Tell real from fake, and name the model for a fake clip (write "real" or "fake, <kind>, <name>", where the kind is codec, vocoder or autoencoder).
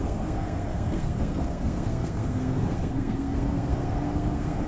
fake, codec, SNAC